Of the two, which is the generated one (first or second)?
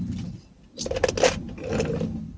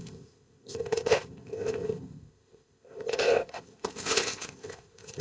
second